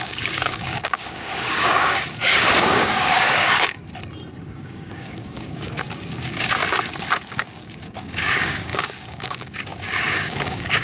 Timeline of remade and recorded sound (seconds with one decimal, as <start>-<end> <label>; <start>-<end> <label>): 0.0-3.8 remade; 3.8-4.4 recorded; 4.4-6.6 remade; 6.6-7.3 recorded; 7.3-10.8 remade